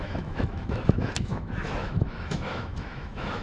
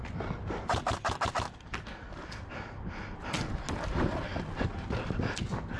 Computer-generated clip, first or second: first